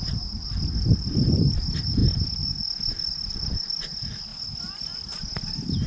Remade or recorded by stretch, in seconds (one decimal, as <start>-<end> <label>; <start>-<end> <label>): 0.0-5.9 recorded